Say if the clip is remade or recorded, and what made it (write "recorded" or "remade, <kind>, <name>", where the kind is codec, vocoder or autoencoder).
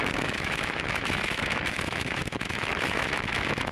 remade, autoencoder, DAC-VAE